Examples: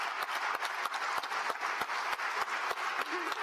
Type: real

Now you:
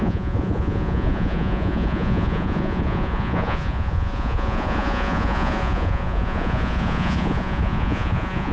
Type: fake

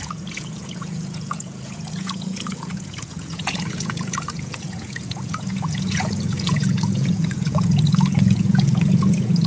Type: fake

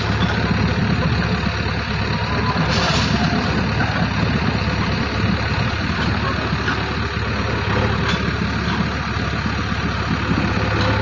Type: real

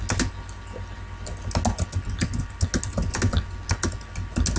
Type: real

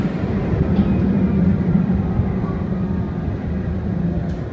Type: real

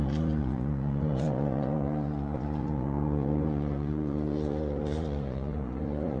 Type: fake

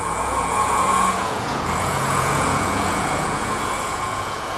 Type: fake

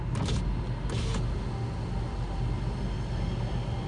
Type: real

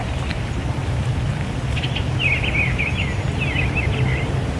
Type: real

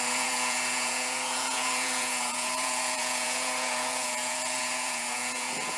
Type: fake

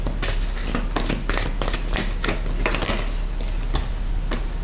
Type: real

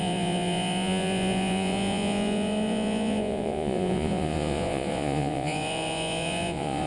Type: fake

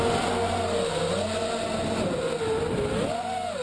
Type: real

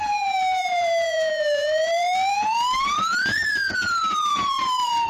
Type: fake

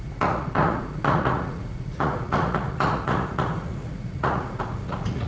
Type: fake